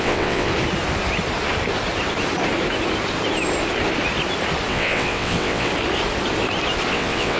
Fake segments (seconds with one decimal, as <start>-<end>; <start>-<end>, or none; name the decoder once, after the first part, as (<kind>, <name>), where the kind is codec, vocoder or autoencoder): 0.0-0.5 (vocoder, WaveNeXt); 4.7-5.7; 6.9-7.4